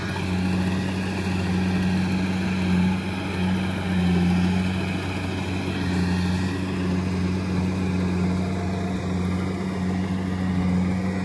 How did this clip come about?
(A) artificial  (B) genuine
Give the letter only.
B